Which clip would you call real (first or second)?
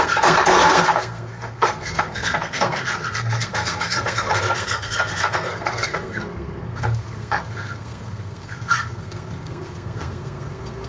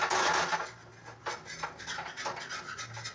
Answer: second